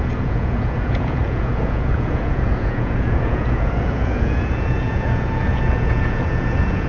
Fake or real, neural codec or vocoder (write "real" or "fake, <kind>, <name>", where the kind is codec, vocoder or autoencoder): fake, vocoder, Vocos